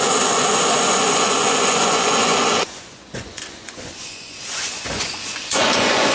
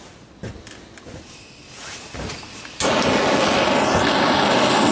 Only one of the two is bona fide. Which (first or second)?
second